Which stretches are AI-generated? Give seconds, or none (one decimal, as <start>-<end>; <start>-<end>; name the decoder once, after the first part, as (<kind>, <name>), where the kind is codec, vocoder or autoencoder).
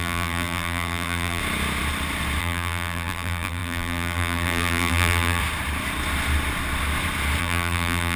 0.0-1.4 (vocoder, BigVGAN v2); 2.4-5.4; 7.4-8.2